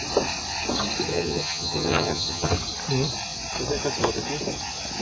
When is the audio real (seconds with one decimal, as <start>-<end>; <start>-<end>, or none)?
0.0-1.1; 2.5-5.0